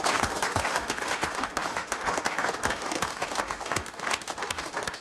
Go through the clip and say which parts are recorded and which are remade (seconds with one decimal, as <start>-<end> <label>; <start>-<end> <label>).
0.0-5.0 remade